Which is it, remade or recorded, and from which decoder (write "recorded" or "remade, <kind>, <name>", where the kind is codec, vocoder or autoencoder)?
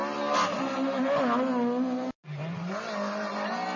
recorded